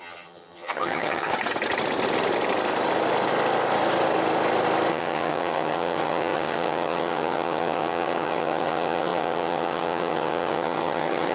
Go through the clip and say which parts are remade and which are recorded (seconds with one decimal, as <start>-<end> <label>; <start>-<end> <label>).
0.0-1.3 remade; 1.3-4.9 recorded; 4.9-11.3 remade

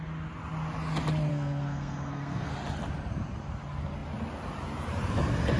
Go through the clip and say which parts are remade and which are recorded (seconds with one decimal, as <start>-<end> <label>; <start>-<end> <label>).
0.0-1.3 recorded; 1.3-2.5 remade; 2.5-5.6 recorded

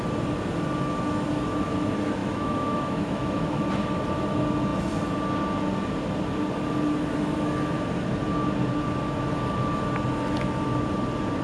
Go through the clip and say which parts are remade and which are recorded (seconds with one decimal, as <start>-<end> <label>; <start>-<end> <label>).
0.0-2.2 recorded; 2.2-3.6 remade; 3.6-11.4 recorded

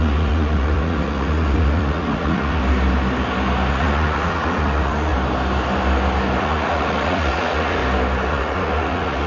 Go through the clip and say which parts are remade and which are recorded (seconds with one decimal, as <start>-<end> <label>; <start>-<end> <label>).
0.0-2.6 remade; 2.6-3.7 recorded; 3.7-5.1 remade; 5.1-6.4 recorded; 6.4-7.8 remade; 7.8-8.3 recorded; 8.3-9.3 remade

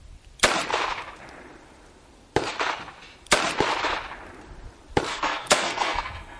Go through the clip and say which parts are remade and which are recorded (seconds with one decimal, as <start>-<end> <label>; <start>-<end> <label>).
0.0-5.1 recorded; 5.1-6.4 remade

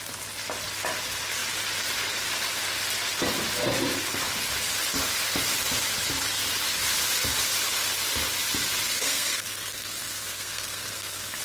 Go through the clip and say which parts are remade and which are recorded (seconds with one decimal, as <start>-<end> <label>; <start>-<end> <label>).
0.0-8.9 recorded; 8.9-11.4 remade

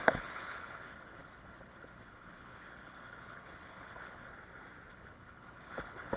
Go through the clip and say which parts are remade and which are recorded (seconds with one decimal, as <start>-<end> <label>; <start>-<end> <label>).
0.0-4.3 remade; 4.3-4.9 recorded; 4.9-6.2 remade